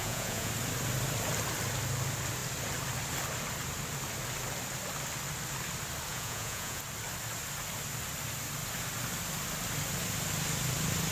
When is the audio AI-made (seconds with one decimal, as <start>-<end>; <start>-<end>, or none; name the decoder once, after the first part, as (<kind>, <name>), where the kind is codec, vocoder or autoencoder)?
0.0-0.5 (vocoder, Vocos); 6.1-6.8